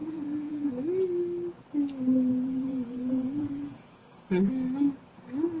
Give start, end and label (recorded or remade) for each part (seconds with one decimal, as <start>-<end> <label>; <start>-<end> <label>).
0.0-0.7 remade; 0.7-2.3 recorded; 2.3-4.3 remade; 4.3-5.6 recorded